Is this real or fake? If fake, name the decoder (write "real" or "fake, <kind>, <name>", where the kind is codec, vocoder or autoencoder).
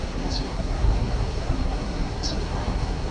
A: fake, codec, SNAC